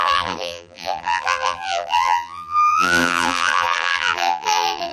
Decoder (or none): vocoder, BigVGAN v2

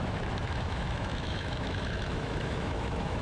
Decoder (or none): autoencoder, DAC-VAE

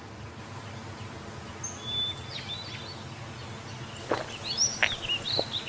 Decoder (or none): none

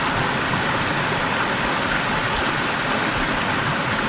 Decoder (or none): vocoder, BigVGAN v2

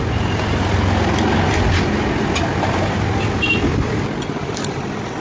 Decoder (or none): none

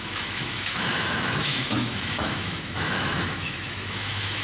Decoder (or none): autoencoder, DAC-VAE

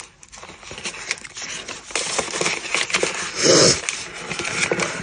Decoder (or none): none